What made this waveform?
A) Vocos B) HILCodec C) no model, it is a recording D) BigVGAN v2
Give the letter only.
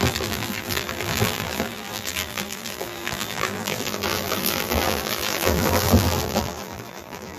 D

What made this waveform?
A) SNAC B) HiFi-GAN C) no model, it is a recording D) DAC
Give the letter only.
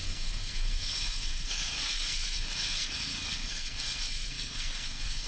A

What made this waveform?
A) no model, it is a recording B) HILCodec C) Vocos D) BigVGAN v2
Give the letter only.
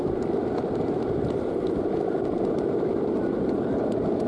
A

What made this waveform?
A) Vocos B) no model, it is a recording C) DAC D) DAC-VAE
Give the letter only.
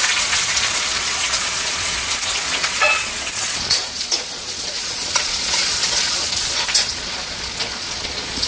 A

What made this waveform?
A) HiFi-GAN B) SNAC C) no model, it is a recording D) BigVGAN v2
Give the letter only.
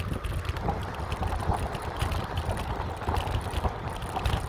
D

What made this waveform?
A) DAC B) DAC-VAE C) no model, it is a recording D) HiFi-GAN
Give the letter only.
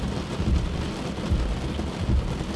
C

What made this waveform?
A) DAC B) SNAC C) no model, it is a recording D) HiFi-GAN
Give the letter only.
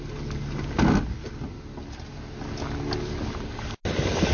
C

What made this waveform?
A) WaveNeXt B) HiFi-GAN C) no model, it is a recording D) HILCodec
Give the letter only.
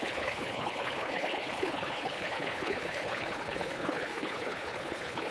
D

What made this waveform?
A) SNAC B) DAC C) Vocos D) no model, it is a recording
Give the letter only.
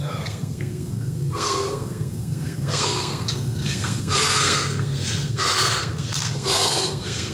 A